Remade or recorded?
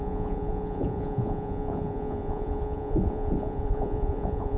remade